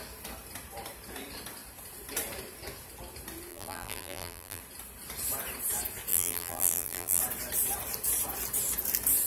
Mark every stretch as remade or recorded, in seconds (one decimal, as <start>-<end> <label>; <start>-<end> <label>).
0.0-3.5 recorded; 3.5-4.6 remade; 4.6-6.1 recorded; 6.1-7.2 remade; 7.2-9.3 recorded

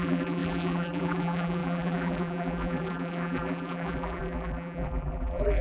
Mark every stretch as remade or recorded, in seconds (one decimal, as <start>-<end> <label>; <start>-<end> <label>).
0.0-5.6 remade